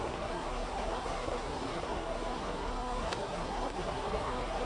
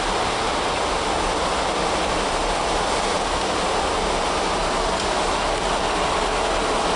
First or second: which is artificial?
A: first